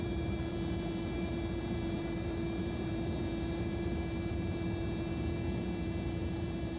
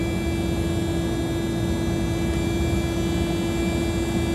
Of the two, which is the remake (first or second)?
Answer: first